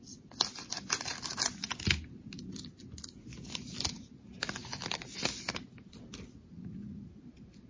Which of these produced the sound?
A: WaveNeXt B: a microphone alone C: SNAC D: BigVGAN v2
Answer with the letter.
B